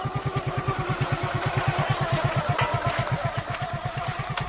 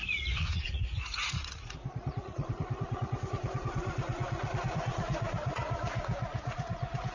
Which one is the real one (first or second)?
first